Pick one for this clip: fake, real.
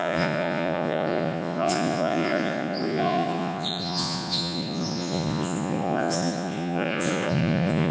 fake